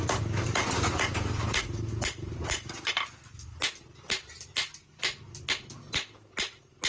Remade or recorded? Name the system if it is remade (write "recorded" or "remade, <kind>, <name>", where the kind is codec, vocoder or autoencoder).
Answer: recorded